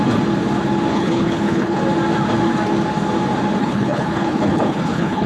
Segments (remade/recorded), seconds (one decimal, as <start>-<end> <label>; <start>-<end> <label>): 0.0-0.9 recorded; 0.9-1.8 remade; 1.8-3.6 recorded; 3.6-5.3 remade